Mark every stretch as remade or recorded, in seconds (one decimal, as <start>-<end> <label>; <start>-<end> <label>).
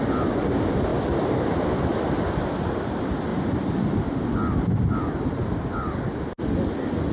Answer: 0.0-7.1 recorded